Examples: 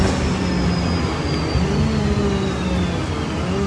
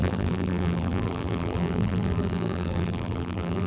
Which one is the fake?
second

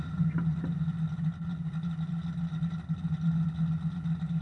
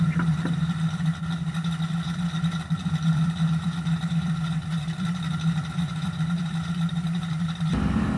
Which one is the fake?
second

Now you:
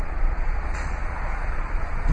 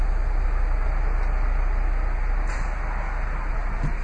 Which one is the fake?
first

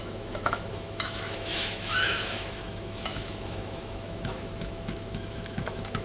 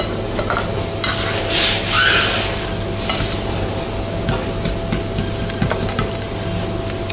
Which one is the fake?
first